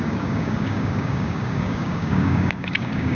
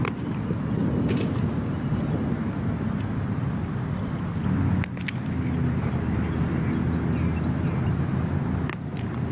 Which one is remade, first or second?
first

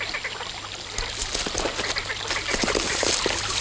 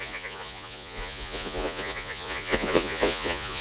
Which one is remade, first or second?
second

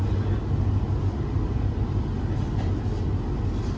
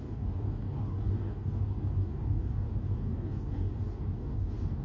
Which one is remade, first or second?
second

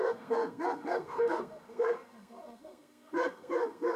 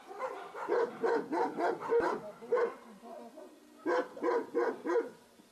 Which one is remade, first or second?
first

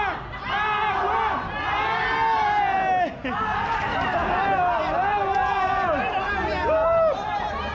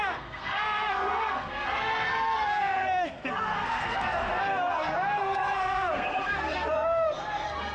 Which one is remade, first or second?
second